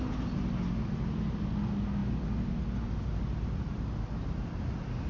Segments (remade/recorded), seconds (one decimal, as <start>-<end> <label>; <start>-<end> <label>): 0.0-5.1 recorded